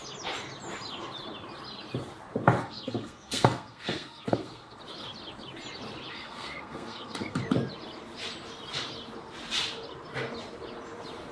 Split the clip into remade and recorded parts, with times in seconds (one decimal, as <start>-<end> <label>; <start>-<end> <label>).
0.0-2.6 recorded; 2.6-4.8 remade; 4.8-6.1 recorded; 6.1-7.4 remade; 7.4-11.3 recorded